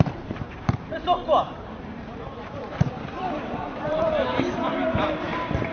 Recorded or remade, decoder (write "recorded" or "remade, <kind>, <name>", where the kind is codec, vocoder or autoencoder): remade, vocoder, BigVGAN v2